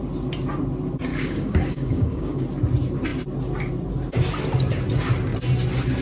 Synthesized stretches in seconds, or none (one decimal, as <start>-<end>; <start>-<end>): 1.1-2.4